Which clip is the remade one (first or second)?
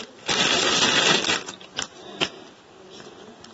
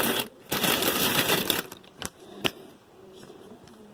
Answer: second